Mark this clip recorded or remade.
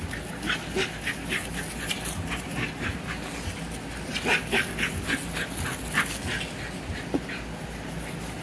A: recorded